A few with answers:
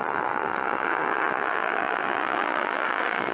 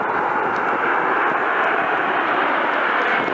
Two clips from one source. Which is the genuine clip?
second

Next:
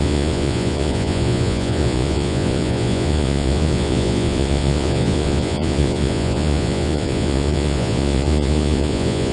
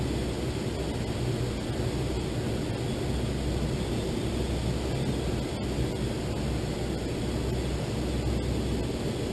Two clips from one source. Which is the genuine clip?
second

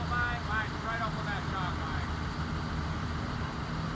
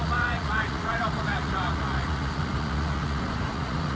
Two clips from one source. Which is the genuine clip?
first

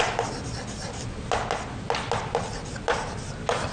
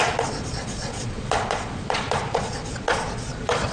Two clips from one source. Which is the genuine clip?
first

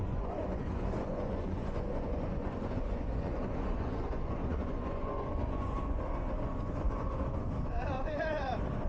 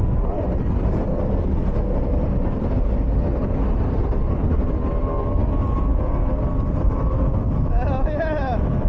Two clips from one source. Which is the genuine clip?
second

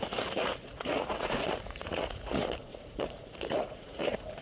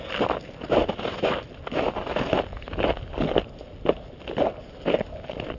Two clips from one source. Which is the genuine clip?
second